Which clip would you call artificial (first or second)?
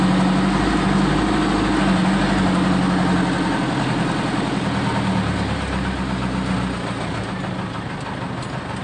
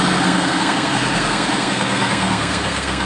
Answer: second